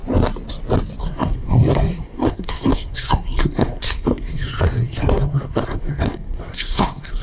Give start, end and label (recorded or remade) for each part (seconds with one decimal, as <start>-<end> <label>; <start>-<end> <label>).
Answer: 0.0-1.0 recorded; 1.0-7.2 remade